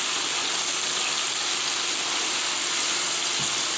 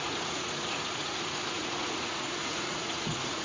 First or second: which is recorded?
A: first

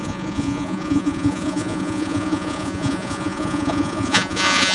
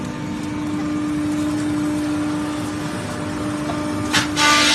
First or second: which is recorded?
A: second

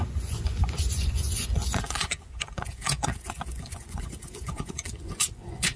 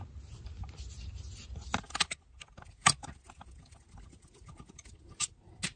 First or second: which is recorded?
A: second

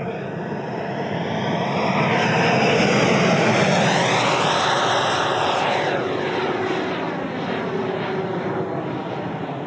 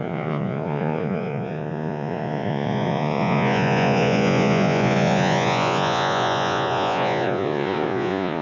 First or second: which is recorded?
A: first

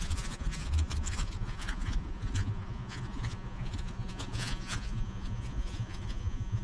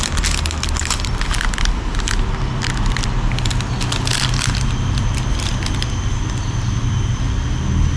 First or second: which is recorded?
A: second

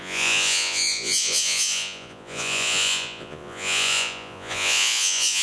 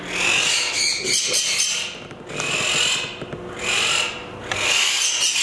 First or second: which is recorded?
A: second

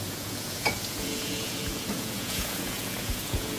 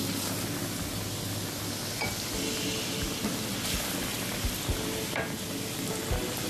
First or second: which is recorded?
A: second